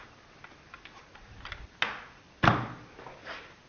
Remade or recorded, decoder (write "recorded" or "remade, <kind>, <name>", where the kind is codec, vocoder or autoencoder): recorded